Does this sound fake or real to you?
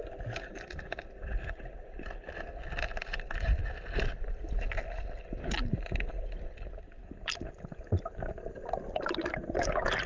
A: real